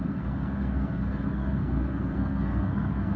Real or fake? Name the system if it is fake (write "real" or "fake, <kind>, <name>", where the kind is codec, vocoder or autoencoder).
fake, codec, SNAC